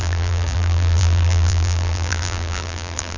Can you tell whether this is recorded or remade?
remade